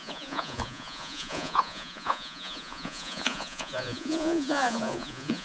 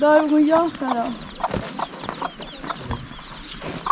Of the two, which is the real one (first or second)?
second